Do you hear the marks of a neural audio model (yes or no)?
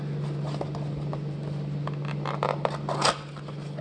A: no